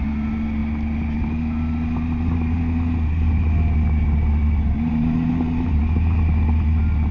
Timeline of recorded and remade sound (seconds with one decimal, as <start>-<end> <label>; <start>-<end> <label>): 0.0-7.1 recorded